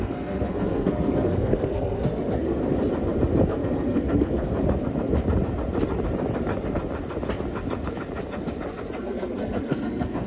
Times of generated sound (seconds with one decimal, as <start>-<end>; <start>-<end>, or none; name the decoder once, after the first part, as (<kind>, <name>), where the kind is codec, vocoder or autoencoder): 0.0-2.6 (codec, SNAC); 3.5-4.5; 9.0-10.3